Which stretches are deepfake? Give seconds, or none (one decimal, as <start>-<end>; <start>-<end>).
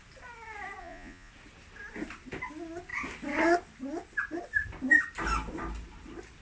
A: 0.8-1.3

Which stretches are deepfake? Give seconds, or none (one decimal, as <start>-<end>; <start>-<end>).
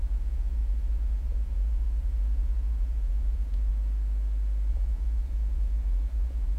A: 0.0-3.7; 4.7-6.6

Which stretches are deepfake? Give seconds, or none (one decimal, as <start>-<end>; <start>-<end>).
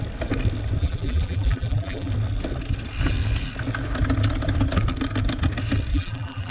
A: 0.8-2.1; 5.9-6.5